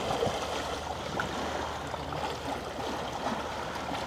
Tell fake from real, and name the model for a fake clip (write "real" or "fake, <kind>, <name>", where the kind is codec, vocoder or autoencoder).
real